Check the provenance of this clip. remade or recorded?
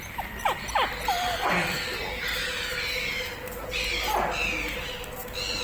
recorded